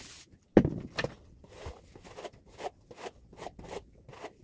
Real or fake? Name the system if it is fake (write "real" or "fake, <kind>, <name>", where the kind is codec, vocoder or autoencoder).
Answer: real